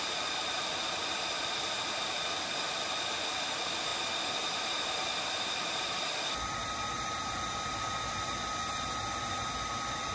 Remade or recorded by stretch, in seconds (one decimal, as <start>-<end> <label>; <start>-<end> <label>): 0.0-10.1 recorded